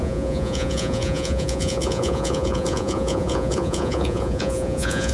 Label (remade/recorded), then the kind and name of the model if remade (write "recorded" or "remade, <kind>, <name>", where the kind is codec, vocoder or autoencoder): remade, vocoder, Vocos